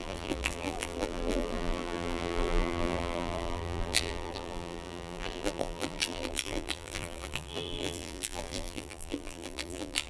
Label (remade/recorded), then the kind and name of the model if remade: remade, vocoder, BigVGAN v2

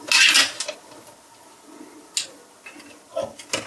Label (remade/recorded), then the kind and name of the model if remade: recorded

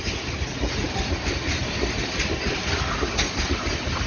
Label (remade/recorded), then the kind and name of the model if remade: recorded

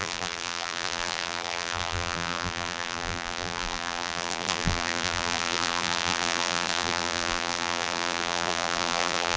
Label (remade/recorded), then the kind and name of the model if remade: remade, vocoder, BigVGAN v2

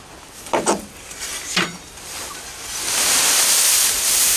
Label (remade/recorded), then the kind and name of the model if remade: recorded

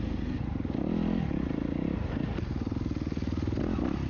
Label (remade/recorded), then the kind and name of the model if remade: recorded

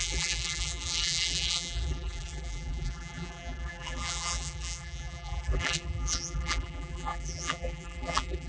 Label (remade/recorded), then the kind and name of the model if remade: remade, vocoder, BigVGAN v2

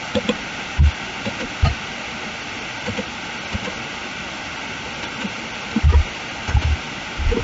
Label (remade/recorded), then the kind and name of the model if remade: recorded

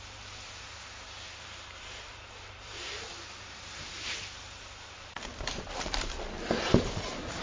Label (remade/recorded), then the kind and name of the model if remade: remade, vocoder, BigVGAN v2